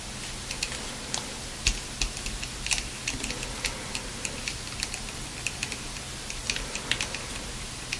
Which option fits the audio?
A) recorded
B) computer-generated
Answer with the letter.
A